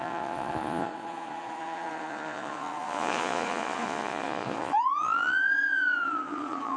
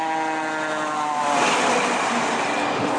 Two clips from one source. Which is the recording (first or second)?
second